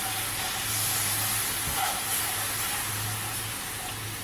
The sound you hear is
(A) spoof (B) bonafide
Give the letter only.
B